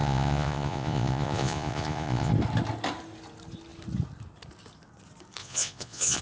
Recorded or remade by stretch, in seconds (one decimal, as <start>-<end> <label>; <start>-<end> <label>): 0.0-2.3 remade; 2.3-5.4 recorded; 5.4-6.2 remade